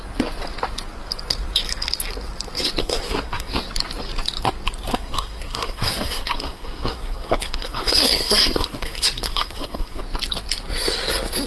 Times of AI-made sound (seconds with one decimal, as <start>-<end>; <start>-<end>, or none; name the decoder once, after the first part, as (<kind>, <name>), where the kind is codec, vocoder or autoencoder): 2.8-3.5 (codec, SNAC); 4.9-10.0